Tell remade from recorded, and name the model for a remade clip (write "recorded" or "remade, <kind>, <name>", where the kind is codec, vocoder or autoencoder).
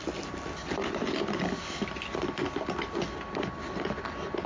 recorded